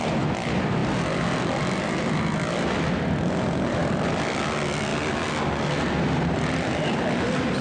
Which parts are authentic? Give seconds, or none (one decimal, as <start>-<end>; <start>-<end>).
0.0-7.6